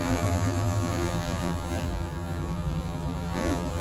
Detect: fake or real fake